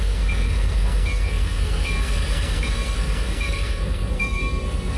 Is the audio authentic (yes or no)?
no